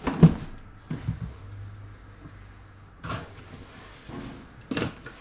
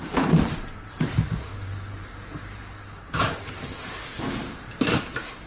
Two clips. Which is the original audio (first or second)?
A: first